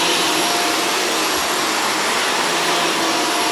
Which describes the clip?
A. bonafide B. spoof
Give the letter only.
A